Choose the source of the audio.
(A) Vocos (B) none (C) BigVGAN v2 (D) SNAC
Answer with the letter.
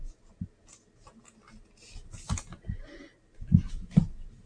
B